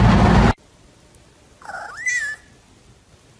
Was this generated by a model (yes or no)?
no